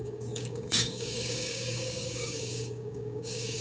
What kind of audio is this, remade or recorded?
remade